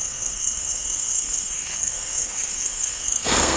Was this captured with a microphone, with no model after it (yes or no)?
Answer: no